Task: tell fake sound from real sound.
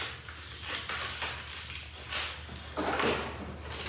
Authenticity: real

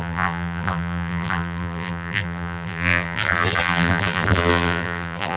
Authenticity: fake